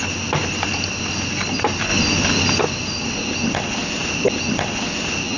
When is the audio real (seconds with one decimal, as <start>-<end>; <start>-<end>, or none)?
0.0-5.4

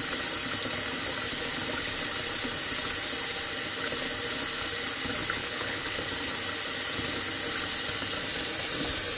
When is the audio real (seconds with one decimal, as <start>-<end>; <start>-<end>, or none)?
0.0-5.4; 6.0-9.2

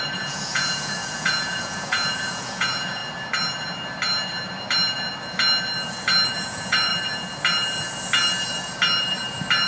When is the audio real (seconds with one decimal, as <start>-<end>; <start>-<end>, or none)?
3.0-6.4; 6.9-9.7

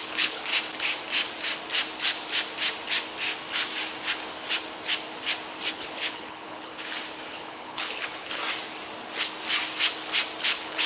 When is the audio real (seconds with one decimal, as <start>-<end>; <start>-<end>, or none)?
0.5-5.7; 6.7-7.3; 8.4-10.4